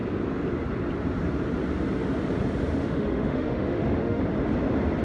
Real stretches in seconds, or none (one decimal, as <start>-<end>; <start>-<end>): 0.0-2.7; 4.2-5.0